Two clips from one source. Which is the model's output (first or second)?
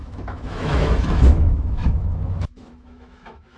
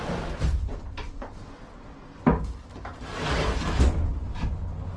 first